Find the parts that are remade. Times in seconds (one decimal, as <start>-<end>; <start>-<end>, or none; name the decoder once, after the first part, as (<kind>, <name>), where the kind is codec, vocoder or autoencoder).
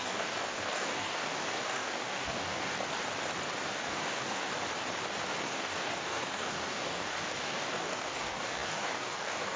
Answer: 0.0-2.8 (codec, DAC); 3.7-4.5; 5.4-9.6